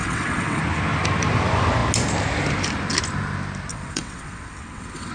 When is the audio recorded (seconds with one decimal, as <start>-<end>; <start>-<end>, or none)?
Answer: 0.6-3.7